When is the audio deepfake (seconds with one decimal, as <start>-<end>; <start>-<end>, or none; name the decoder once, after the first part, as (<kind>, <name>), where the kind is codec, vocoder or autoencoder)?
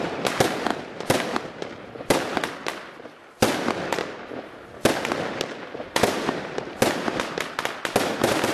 none